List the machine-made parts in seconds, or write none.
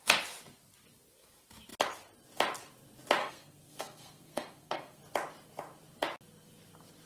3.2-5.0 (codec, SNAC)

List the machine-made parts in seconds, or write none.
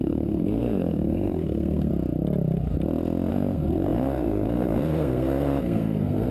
0.0-1.9 (codec, SNAC); 3.3-6.3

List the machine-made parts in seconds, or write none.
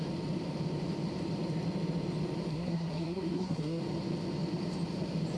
2.5-3.8 (codec, SNAC)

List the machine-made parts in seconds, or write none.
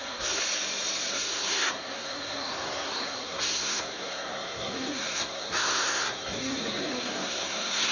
0.0-0.4 (codec, SNAC); 1.1-7.9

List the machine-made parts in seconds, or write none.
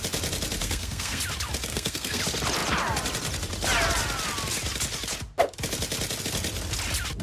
0.6-1.2 (codec, SNAC); 1.7-2.2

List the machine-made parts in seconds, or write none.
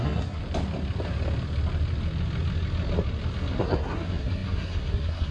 0.0-0.4 (codec, SNAC); 3.6-5.3